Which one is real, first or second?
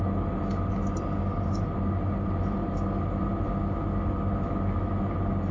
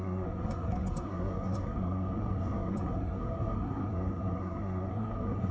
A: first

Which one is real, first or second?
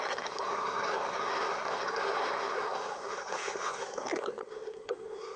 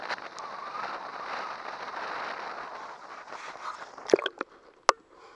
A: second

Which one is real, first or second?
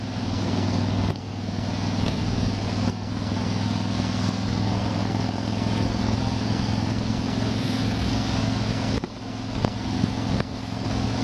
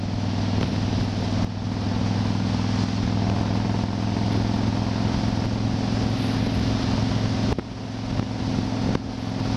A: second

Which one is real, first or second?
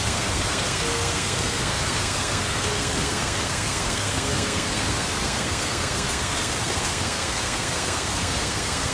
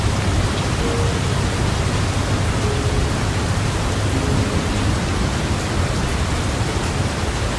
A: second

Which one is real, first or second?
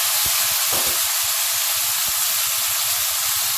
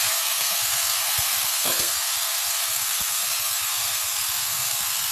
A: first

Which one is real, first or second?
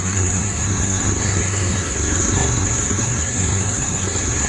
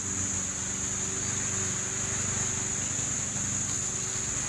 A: second